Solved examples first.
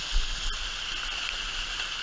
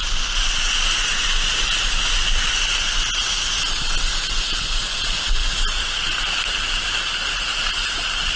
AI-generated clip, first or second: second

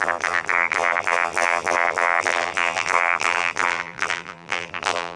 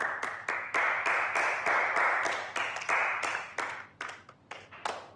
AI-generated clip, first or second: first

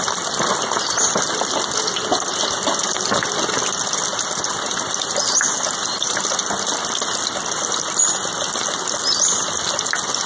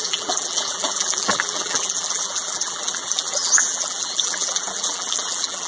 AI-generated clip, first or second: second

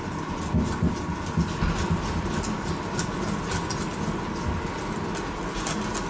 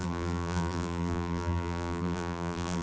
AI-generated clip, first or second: second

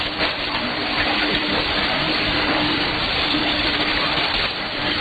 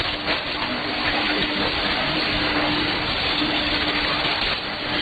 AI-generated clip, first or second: first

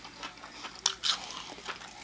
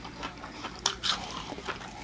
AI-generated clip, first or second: second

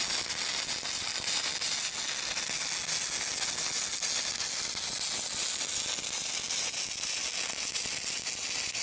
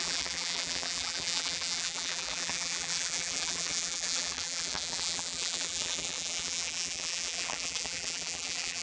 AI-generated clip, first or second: second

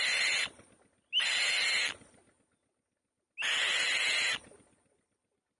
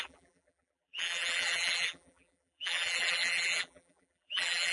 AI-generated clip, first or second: second